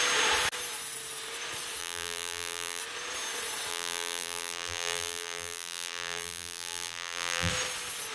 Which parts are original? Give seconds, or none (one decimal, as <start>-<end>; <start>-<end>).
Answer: 0.0-1.8; 2.8-3.7; 7.5-8.1